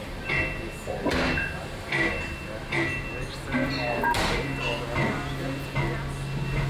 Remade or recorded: recorded